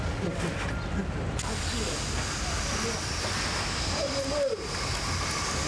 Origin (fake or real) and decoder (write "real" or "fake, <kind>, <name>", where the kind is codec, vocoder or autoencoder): real